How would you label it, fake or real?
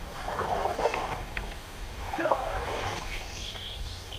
fake